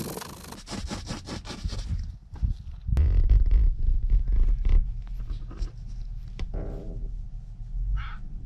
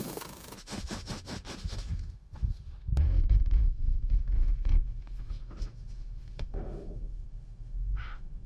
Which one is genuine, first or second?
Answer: first